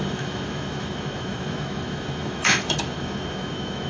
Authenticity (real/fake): fake